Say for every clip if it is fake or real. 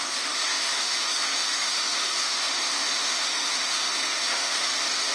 fake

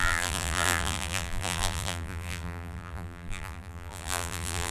fake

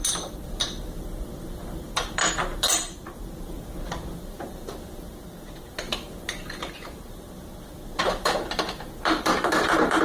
fake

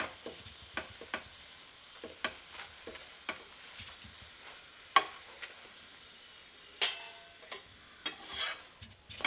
real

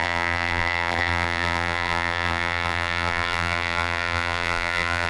fake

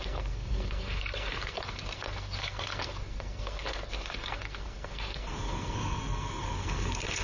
fake